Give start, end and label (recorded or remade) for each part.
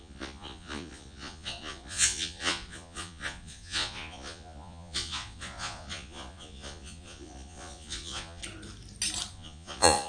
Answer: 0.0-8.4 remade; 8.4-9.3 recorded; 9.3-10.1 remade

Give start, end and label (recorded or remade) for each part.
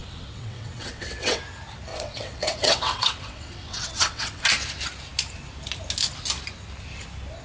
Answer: 0.0-1.4 remade; 1.4-1.9 recorded; 1.9-4.4 remade; 4.4-7.4 recorded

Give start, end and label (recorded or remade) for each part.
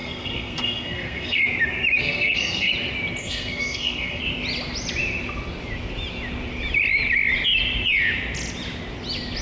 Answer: 0.0-1.4 remade; 1.4-2.0 recorded; 2.0-2.7 remade; 2.7-3.2 recorded; 3.2-4.2 remade; 4.2-9.4 recorded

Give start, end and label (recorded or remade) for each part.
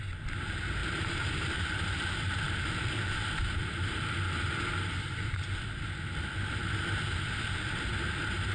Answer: 0.0-0.8 recorded; 0.8-4.5 remade; 4.5-8.5 recorded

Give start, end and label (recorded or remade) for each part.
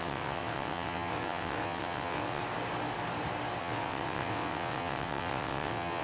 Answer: 0.0-2.4 remade; 2.4-3.6 recorded; 3.6-6.0 remade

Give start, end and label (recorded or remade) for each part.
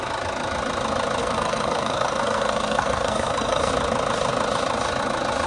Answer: 0.0-1.2 recorded; 1.2-3.7 remade; 3.7-5.5 recorded